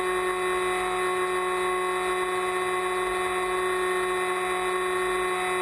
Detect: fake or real real